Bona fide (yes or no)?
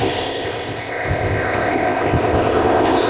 no